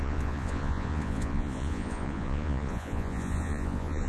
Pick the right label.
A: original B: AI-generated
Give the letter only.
B